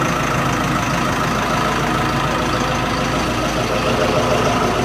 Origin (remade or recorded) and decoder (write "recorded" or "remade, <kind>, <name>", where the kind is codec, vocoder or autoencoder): recorded